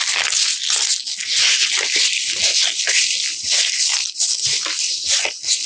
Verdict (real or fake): real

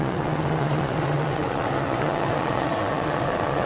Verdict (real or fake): fake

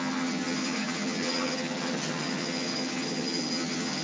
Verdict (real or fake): fake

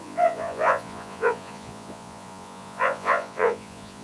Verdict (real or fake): fake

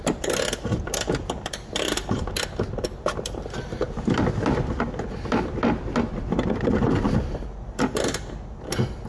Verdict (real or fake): real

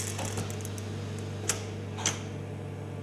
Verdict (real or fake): real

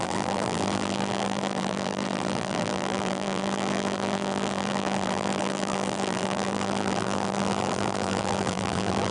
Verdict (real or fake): fake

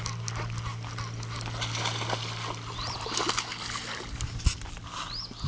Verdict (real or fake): real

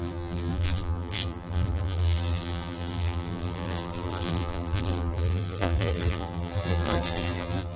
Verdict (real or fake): fake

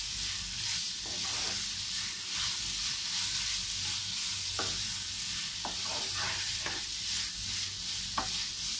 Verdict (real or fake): real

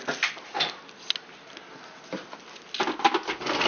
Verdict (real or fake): real